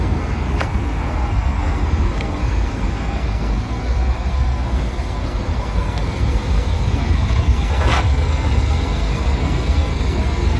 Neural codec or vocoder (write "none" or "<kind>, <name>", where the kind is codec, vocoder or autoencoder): codec, SNAC